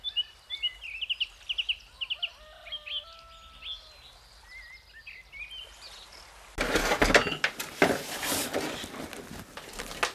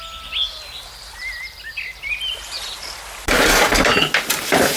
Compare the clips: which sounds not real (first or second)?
second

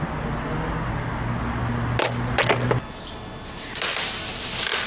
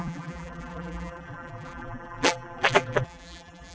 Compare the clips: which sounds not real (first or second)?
second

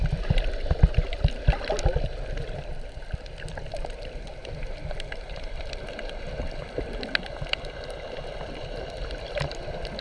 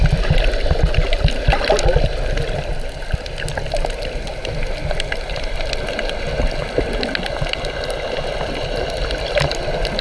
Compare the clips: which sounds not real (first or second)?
first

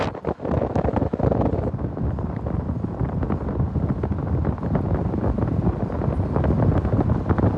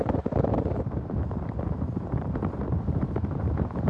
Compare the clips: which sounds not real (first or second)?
second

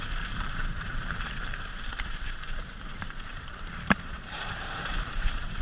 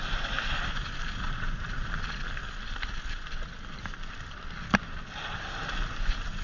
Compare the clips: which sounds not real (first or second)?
first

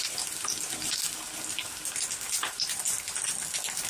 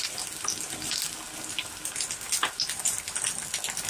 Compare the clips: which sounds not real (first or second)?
first